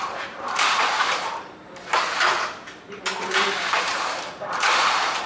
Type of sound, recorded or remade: remade